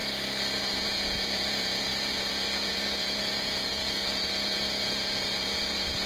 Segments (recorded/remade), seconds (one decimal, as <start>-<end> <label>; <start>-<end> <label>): 0.0-0.6 recorded; 0.6-6.1 remade